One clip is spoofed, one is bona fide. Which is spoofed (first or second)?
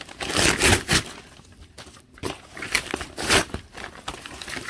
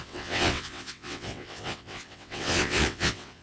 second